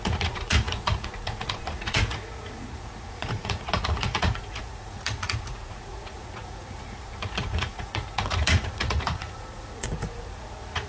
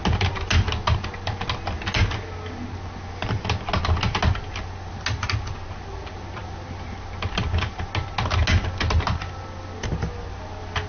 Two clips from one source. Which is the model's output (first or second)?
first